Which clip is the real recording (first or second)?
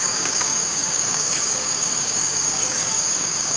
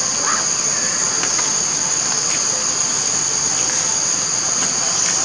second